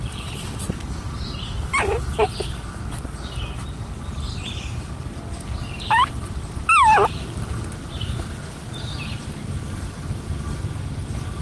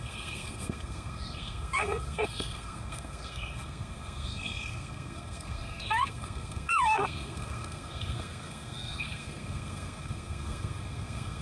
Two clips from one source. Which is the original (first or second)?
first